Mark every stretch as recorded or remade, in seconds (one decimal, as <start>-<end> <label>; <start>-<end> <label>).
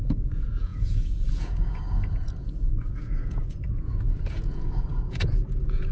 0.0-5.9 remade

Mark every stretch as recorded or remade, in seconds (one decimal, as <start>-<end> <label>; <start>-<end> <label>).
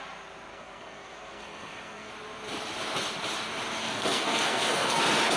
0.0-0.5 recorded; 0.5-2.1 remade; 2.1-3.8 recorded; 3.8-5.0 remade; 5.0-5.4 recorded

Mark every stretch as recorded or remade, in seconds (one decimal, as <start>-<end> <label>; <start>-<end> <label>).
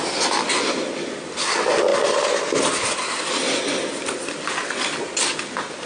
0.0-5.9 recorded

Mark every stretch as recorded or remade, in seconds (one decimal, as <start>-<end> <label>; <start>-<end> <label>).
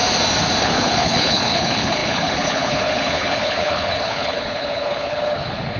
0.0-0.6 recorded; 0.6-5.8 remade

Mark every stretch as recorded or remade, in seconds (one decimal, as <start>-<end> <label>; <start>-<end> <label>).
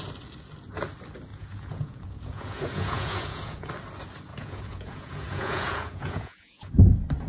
0.0-1.3 recorded; 1.3-3.7 remade; 3.7-4.3 recorded; 4.3-6.7 remade; 6.7-7.3 recorded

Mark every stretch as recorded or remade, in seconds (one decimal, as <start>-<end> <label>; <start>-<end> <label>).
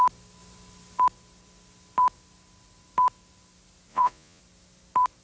0.0-3.9 recorded; 3.9-4.4 remade; 4.4-5.2 recorded